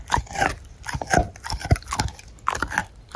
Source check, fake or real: real